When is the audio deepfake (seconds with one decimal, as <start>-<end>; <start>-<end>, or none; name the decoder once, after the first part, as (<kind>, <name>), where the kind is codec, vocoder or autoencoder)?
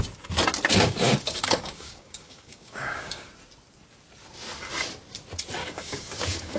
0.7-3.3 (codec, DAC); 5.6-6.6